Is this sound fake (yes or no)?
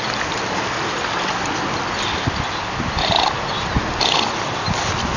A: no